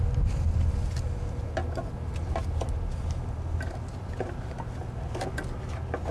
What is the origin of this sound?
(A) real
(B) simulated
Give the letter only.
A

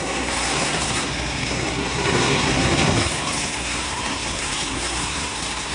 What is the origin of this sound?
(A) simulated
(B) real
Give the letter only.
A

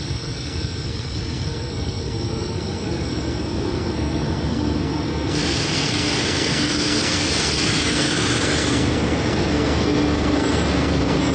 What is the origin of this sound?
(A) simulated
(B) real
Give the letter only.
A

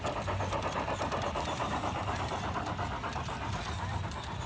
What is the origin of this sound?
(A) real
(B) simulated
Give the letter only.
A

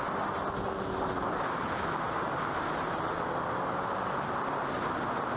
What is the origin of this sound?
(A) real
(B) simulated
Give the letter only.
A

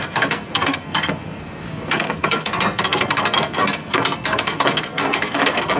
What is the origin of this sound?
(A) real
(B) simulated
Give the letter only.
B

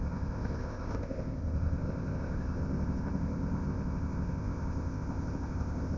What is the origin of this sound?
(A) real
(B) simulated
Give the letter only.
B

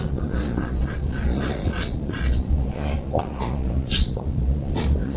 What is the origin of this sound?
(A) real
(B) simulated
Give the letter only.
B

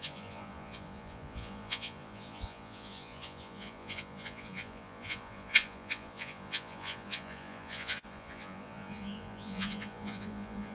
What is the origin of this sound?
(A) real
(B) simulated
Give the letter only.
B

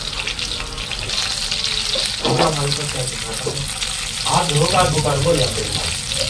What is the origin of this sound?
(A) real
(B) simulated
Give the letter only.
A